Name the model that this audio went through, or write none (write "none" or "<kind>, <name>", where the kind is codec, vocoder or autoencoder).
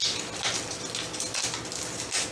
none